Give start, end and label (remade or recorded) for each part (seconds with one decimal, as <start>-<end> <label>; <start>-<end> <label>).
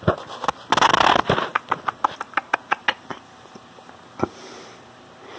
0.0-5.4 recorded